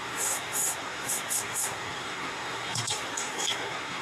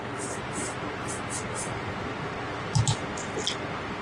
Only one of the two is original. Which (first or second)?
second